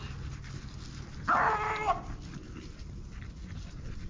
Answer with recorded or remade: recorded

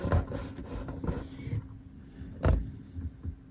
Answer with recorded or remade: recorded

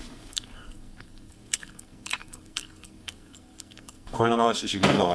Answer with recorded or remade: remade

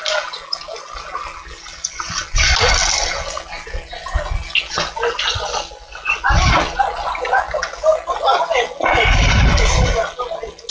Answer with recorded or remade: recorded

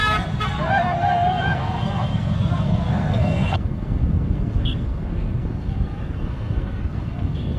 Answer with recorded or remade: remade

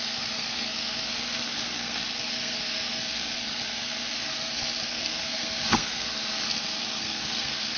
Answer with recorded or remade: remade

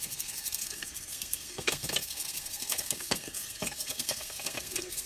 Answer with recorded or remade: remade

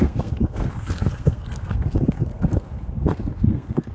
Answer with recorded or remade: remade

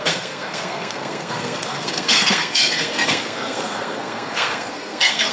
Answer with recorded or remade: remade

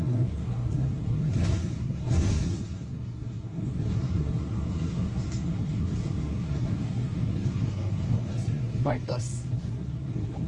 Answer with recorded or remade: remade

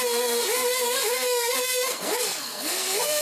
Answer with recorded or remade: remade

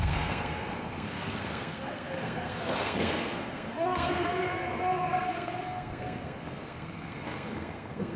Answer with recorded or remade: remade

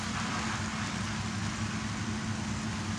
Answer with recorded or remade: recorded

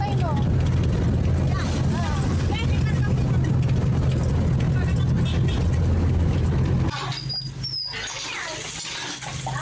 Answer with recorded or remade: recorded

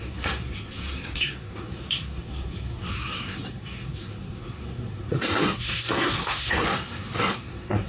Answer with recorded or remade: remade